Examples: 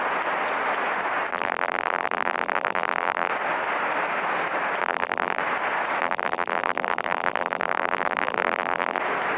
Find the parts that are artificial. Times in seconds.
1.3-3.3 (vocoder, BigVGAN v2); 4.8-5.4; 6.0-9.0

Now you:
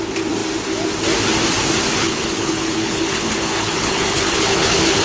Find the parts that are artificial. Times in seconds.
2.0-5.0 (codec, HILCodec)